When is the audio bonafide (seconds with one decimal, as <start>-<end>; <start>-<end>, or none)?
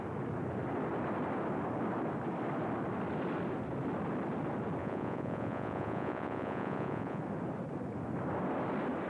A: 0.0-4.8; 7.2-9.1